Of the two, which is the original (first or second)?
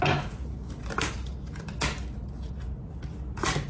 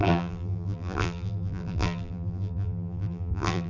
first